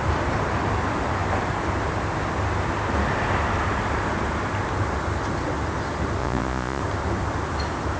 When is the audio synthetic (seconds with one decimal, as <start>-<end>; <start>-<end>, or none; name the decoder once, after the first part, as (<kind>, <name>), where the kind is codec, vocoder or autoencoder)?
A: 6.2-6.8 (vocoder, Vocos)